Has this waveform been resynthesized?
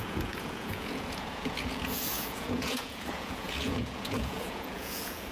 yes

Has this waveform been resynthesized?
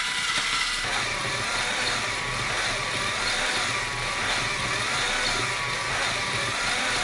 no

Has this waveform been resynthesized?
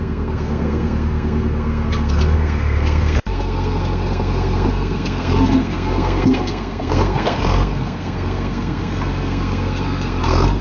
yes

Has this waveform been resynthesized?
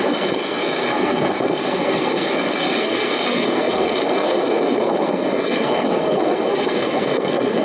yes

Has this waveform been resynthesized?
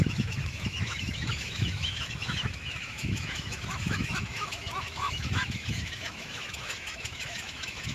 yes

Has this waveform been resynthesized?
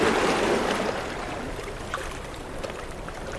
no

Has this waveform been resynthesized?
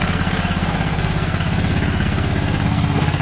yes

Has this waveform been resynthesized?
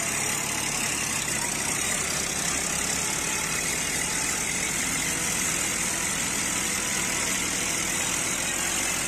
no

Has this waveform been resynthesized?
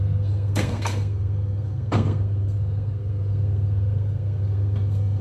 yes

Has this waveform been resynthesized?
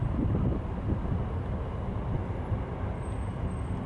no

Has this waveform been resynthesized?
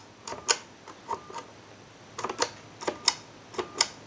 no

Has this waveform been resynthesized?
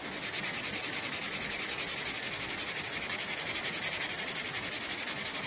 no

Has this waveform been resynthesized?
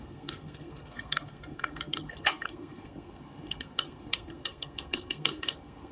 yes